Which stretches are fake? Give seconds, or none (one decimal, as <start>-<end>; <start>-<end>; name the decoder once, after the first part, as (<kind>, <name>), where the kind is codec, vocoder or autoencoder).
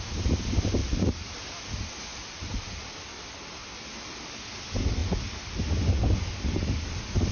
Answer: none